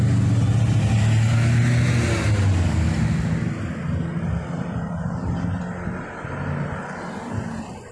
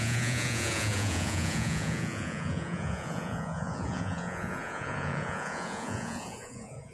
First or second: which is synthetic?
second